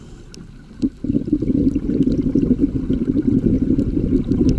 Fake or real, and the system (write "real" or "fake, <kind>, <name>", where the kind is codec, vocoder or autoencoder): real